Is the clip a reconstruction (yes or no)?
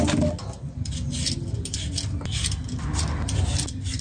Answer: no